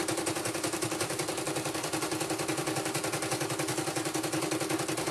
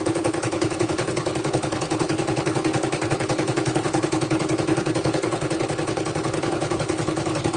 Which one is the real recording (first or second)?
first